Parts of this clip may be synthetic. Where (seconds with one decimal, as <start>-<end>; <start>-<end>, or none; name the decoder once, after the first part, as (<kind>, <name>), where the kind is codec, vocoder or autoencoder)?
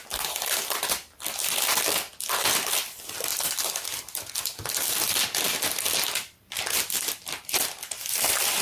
none